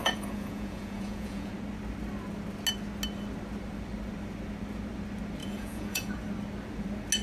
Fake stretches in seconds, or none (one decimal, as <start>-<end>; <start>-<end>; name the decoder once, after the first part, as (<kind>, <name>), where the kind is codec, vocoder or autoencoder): 0.0-1.5 (vocoder, Vocos); 5.4-6.1